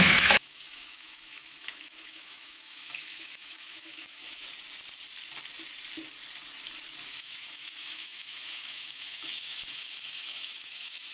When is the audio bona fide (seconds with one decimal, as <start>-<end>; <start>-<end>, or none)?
4.4-7.1